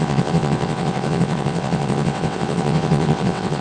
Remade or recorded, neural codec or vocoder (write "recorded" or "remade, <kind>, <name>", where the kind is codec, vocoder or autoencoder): remade, vocoder, WaveNeXt